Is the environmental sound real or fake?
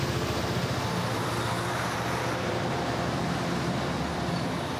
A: fake